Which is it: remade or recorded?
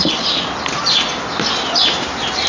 recorded